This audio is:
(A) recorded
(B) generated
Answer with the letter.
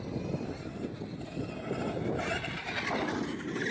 A